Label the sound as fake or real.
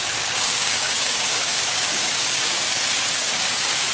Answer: fake